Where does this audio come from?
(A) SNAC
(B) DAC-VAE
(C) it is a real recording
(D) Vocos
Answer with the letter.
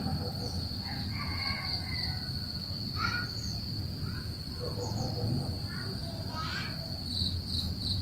C